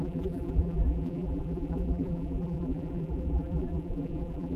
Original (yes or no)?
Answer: no